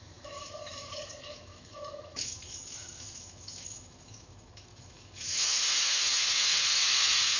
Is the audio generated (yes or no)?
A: yes